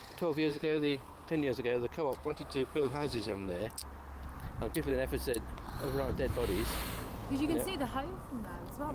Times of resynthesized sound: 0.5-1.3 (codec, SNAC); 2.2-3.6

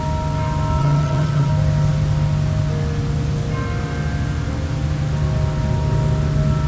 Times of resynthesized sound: 0.8-1.5 (vocoder, HiFi-GAN)

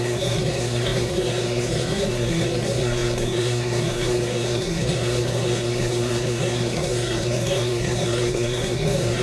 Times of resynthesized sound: 0.0-9.2 (codec, SNAC)

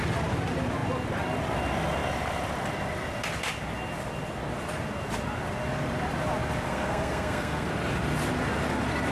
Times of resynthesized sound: 6.7-7.7 (codec, SNAC)

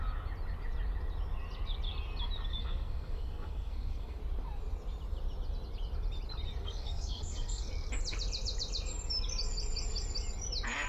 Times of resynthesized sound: 2.5-4.2 (codec, SNAC); 6.6-7.7

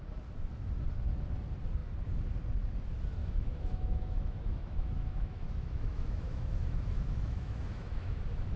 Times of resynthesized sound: 3.2-8.2 (autoencoder, DAC-VAE)

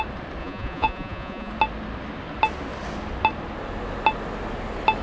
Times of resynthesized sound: 0.4-1.5 (vocoder, Vocos)